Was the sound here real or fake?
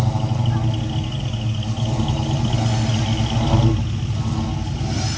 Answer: real